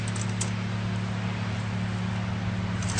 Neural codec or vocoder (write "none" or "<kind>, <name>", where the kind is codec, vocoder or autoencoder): none